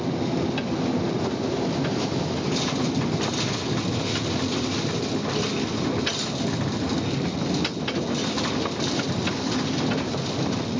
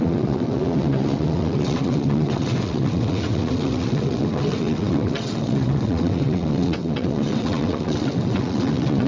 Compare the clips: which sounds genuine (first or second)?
first